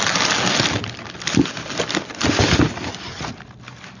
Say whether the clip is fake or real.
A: real